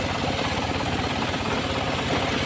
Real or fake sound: real